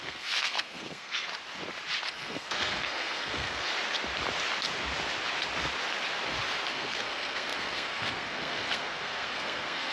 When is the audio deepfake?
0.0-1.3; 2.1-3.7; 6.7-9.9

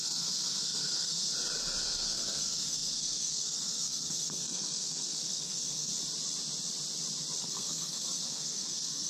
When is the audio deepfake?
0.0-1.3; 1.8-5.9; 7.4-9.1